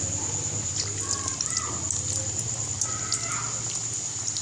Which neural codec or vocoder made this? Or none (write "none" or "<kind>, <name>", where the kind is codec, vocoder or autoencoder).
none